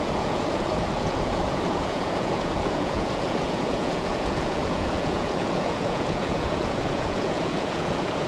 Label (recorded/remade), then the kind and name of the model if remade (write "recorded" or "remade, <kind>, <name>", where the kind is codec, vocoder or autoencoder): remade, vocoder, Vocos